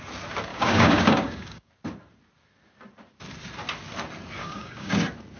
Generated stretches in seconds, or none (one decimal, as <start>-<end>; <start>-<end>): 0.5-1.7; 4.4-4.9